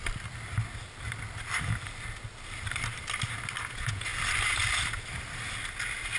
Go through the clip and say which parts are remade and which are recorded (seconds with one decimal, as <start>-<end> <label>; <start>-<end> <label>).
0.0-3.6 recorded; 3.6-4.1 remade; 4.1-6.2 recorded